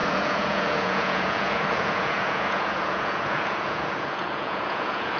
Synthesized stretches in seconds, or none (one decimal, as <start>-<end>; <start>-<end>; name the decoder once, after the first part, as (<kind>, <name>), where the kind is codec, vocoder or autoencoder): 0.0-5.2 (vocoder, Vocos)